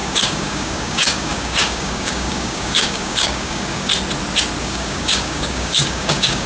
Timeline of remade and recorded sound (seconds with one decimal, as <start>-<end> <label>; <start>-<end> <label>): 0.0-3.9 remade; 3.9-4.6 recorded; 4.6-6.5 remade